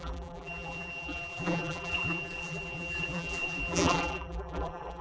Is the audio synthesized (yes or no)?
yes